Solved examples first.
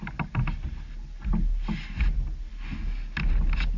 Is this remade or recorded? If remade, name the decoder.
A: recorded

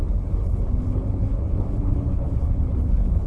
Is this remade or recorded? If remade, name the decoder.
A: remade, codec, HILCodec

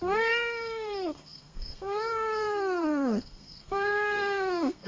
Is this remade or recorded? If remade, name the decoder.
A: remade, codec, SNAC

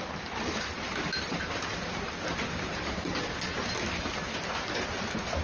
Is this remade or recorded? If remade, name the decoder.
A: remade, vocoder, BigVGAN v2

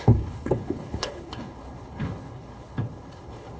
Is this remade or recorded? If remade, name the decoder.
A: remade, codec, HILCodec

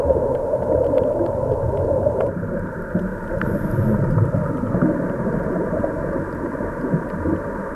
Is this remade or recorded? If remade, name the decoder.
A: remade, vocoder, BigVGAN v2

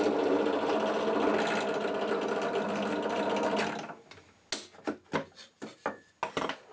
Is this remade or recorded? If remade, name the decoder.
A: recorded